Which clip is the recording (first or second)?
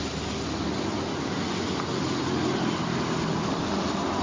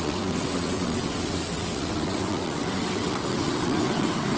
first